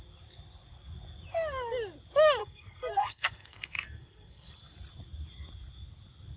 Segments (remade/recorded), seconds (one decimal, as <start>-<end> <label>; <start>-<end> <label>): 0.0-2.4 recorded; 2.4-4.5 remade; 4.5-6.4 recorded